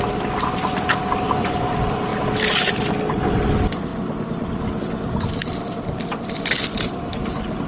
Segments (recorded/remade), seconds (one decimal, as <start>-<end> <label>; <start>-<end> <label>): 0.0-2.1 remade; 2.1-3.1 recorded; 3.1-3.9 remade; 3.9-4.8 recorded; 4.8-7.7 remade